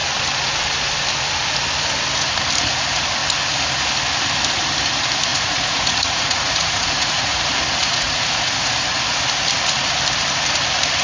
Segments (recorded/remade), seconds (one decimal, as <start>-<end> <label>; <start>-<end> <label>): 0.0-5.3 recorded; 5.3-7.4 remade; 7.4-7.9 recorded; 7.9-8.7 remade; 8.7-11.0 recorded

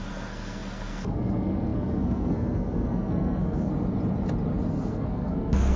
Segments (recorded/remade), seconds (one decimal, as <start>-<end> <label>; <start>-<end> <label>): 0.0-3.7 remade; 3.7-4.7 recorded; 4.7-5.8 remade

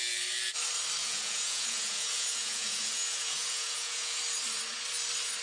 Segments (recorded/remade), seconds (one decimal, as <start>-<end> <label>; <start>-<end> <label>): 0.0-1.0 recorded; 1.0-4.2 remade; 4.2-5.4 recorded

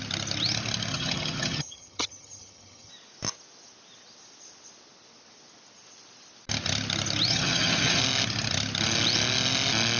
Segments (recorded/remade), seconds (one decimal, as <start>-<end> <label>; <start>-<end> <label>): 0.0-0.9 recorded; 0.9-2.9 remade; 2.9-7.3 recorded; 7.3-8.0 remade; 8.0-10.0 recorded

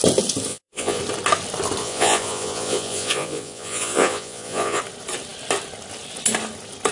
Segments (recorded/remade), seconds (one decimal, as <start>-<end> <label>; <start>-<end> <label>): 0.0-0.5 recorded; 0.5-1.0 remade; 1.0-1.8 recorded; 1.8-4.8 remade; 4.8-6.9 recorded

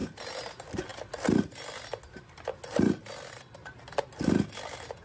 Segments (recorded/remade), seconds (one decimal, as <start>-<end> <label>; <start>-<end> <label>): 0.0-5.0 recorded